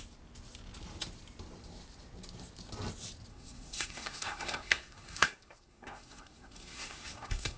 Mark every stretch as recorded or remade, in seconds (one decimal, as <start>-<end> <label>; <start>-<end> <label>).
0.0-3.3 recorded; 3.3-7.6 remade